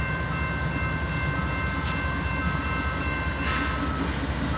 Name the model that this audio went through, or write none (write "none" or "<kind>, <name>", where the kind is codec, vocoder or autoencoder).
none